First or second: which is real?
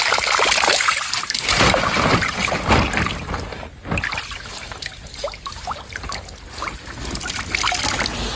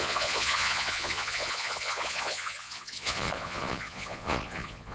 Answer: first